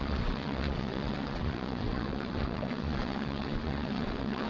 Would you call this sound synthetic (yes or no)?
yes